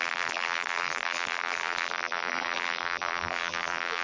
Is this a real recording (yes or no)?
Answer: no